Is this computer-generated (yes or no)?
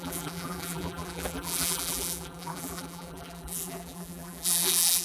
yes